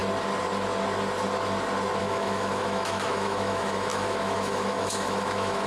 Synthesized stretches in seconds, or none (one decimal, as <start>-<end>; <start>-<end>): 2.0-5.7